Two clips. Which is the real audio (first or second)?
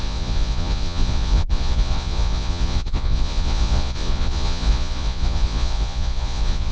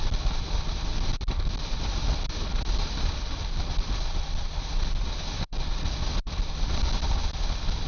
second